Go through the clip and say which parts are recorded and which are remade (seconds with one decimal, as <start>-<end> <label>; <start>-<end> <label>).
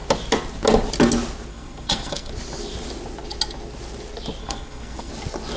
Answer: 0.0-1.5 recorded; 1.5-2.3 remade; 2.3-4.4 recorded; 4.4-5.1 remade; 5.1-5.6 recorded